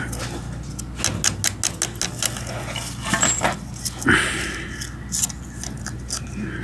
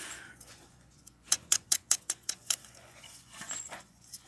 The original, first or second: first